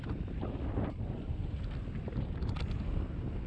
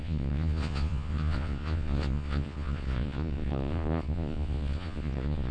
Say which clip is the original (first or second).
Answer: first